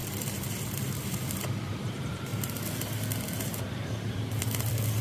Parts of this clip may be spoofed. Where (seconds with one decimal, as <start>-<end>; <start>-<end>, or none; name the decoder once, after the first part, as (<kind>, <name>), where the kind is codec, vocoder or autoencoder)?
0.7-2.3 (vocoder, BigVGAN v2); 3.6-5.0